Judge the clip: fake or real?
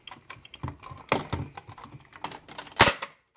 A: real